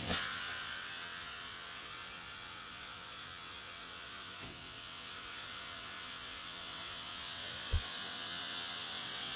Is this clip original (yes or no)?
no